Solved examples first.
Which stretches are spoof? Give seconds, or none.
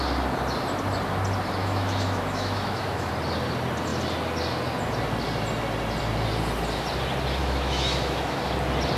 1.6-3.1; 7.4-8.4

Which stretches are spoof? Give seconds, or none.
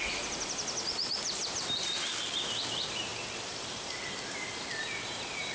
none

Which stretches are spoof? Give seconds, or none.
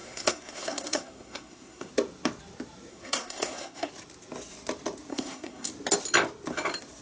0.0-1.9; 2.9-3.9; 5.1-5.7